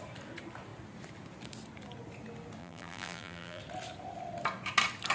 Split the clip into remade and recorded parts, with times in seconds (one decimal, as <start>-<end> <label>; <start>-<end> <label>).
0.0-2.6 recorded; 2.6-3.6 remade; 3.6-5.1 recorded